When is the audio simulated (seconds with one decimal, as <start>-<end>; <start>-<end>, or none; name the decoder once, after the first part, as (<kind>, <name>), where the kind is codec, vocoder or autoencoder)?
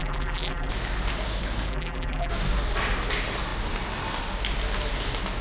0.0-0.7 (vocoder, BigVGAN v2); 1.7-2.3